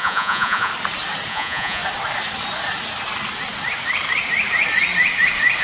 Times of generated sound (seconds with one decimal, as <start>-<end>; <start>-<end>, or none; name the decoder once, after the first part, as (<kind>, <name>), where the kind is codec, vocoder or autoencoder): 0.0-0.7 (vocoder, Vocos); 1.3-1.8